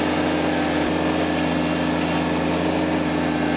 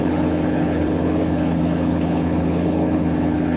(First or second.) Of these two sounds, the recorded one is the first